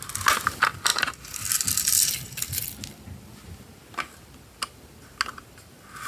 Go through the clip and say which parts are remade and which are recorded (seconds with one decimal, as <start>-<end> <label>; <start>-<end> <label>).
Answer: 0.0-6.1 recorded